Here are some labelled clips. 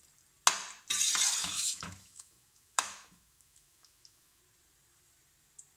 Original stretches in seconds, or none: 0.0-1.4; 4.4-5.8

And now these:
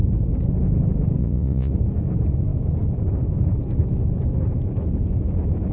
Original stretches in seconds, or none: 0.0-1.2; 1.7-5.7

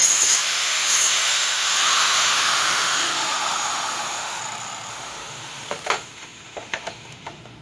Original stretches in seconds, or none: 4.4-4.9

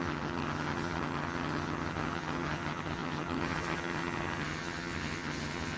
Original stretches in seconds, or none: none

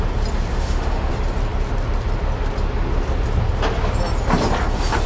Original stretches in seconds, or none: 0.0-0.5; 1.1-5.1

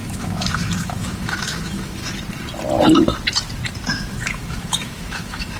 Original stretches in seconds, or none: 2.0-3.9